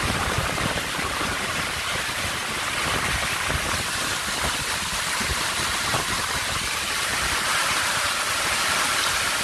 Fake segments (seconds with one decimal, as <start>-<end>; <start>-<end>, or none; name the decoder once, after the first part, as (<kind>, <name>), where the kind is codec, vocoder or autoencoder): 0.0-2.4 (vocoder, BigVGAN v2); 4.7-9.4